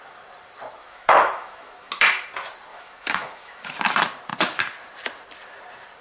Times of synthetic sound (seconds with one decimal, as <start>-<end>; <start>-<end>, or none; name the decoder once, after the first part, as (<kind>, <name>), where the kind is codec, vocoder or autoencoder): 0.8-1.9 (autoencoder, DAC-VAE); 2.7-3.7